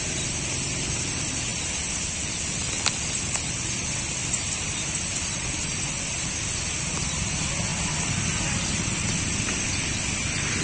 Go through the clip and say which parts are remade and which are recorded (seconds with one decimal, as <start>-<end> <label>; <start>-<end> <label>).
0.0-1.5 recorded; 1.5-6.3 remade; 6.3-7.7 recorded; 7.7-8.5 remade; 8.5-10.6 recorded